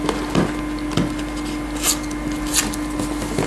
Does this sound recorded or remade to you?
recorded